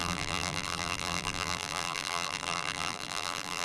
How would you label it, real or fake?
fake